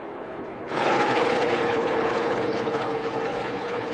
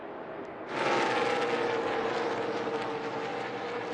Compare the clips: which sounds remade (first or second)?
first